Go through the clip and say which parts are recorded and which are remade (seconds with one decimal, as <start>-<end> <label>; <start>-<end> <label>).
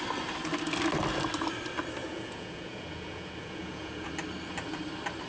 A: 0.0-2.0 recorded; 2.0-4.1 remade; 4.1-5.3 recorded